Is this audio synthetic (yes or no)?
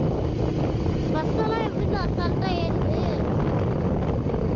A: no